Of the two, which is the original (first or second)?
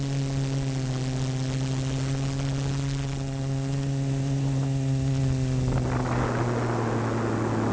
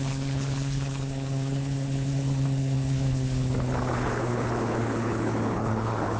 first